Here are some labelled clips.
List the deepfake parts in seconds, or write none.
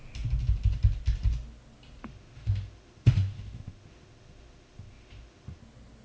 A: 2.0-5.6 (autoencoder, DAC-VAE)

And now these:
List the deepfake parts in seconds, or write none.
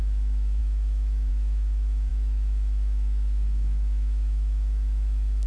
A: 0.0-5.5 (autoencoder, DAC-VAE)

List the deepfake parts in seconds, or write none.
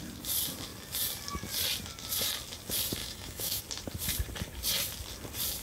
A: 3.0-3.6 (autoencoder, DAC-VAE)